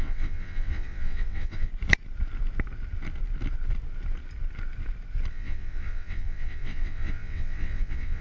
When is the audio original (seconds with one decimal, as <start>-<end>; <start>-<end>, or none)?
1.7-5.3